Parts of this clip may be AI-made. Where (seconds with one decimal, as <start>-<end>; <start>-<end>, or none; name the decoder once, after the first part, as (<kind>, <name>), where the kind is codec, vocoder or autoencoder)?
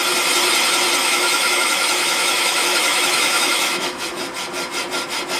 1.0-4.2 (autoencoder, DAC-VAE)